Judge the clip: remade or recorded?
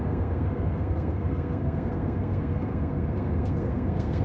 remade